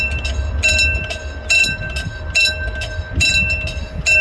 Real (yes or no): yes